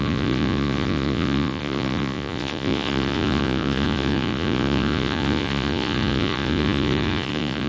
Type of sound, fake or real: fake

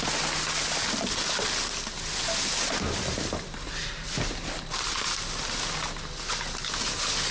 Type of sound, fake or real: real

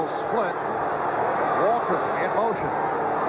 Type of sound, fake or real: real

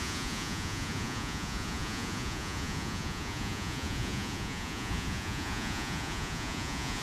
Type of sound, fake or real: fake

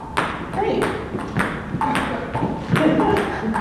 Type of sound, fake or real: real